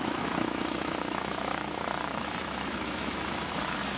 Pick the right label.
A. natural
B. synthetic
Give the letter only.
B